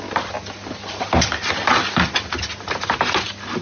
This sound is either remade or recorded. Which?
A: recorded